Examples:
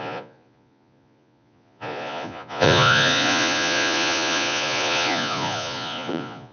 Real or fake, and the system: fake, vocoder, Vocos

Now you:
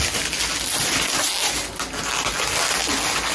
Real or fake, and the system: real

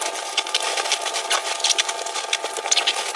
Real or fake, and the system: real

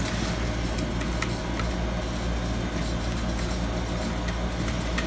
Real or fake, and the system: real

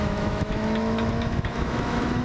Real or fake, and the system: fake, autoencoder, DAC-VAE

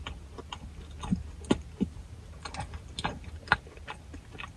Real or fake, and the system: real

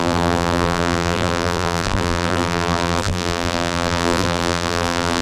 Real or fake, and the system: fake, vocoder, BigVGAN v2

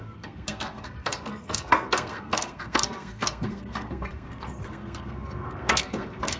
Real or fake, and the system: fake, codec, SNAC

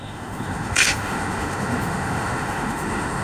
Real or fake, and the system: fake, autoencoder, DAC-VAE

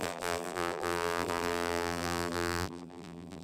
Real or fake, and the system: fake, vocoder, BigVGAN v2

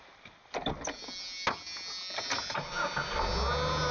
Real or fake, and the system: real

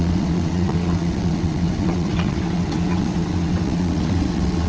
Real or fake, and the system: fake, vocoder, WaveNeXt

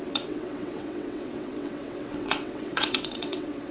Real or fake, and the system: fake, vocoder, WaveNeXt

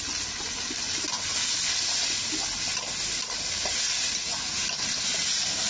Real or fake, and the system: real